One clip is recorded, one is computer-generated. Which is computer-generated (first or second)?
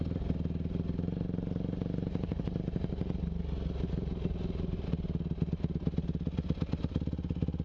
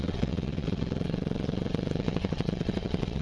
second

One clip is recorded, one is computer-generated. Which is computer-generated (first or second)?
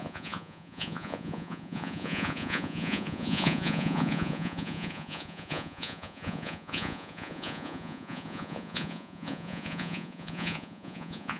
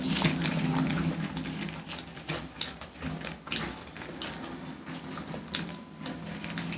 first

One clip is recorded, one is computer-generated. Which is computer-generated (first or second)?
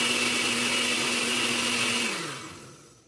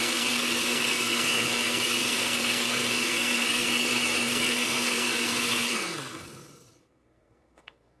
second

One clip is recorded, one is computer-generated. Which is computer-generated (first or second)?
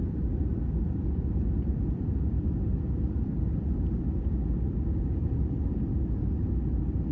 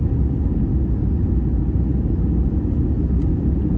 first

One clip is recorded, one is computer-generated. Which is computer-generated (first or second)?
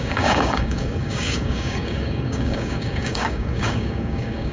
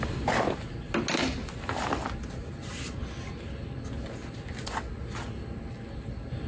first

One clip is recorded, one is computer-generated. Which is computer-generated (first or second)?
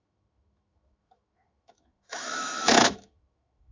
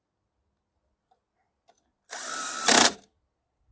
first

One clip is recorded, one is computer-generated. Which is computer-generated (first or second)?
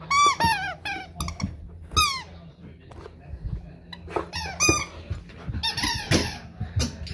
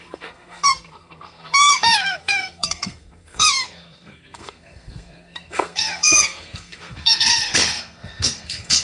second